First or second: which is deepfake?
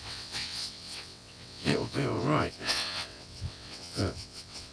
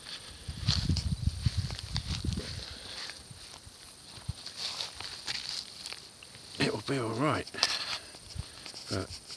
first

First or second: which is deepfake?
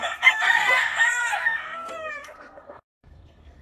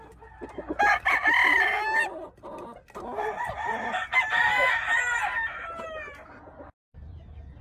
first